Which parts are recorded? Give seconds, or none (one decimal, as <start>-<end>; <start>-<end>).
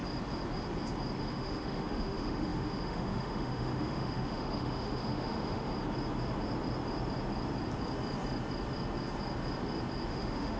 0.0-1.2; 5.7-10.1